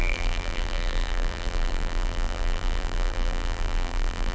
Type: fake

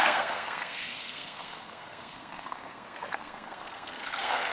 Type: fake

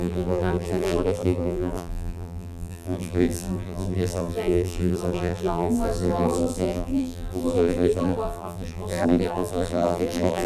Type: fake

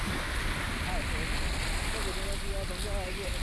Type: real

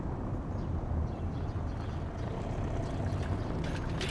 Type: real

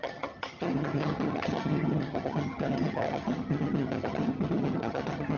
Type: fake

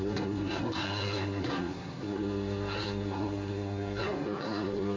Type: fake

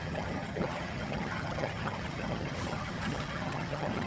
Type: fake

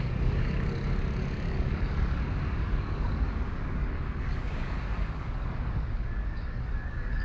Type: fake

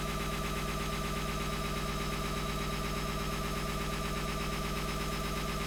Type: fake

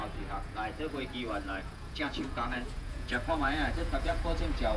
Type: fake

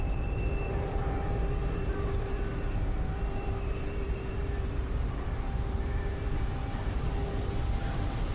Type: fake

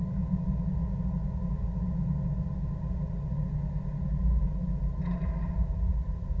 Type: real